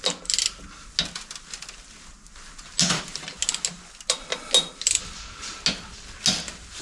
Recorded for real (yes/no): yes